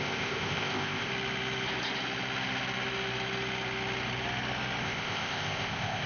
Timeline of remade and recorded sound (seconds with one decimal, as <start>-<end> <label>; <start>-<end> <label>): 0.0-1.1 remade; 1.1-4.8 recorded; 4.8-6.1 remade